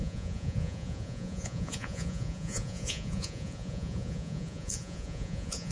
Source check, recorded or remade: remade